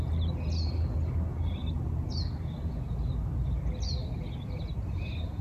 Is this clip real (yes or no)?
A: yes